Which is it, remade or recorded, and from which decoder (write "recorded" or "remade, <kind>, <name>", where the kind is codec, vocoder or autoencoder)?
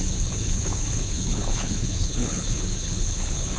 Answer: remade, codec, HILCodec